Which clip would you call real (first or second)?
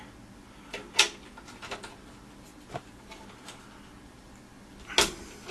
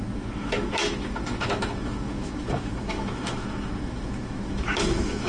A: first